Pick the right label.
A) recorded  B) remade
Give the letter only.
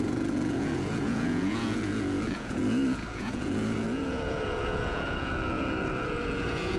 B